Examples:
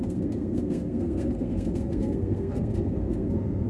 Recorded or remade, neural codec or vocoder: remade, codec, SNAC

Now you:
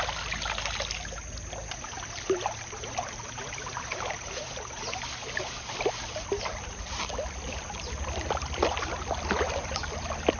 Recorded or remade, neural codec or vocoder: recorded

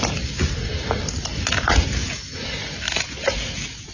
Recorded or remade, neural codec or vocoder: recorded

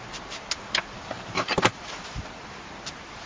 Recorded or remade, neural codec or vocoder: remade, vocoder, BigVGAN v2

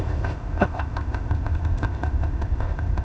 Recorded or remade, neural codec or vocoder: remade, codec, ZipCodec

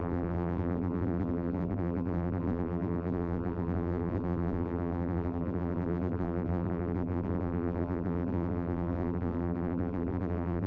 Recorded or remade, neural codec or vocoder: remade, vocoder, BigVGAN v2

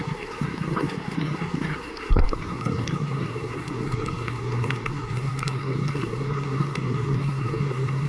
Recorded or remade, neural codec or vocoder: remade, codec, SNAC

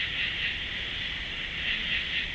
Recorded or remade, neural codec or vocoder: recorded